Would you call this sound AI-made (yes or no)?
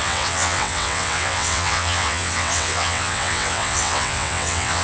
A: yes